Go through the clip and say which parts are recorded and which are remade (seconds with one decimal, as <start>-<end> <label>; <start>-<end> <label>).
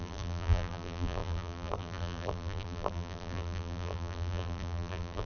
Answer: 0.0-5.2 remade